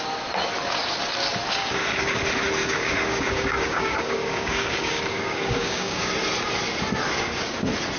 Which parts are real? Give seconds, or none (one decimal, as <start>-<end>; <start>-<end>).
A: 0.0-1.6; 2.2-2.6; 6.1-8.0